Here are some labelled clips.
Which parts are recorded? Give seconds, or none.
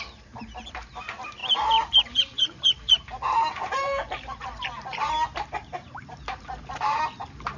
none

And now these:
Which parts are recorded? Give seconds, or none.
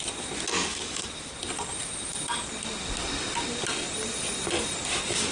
0.0-0.7; 1.3-5.3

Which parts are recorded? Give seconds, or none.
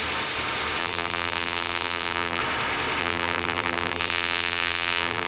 0.0-0.8; 2.4-3.0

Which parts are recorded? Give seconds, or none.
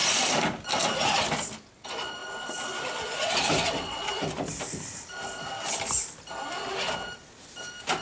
0.7-2.2; 6.3-8.0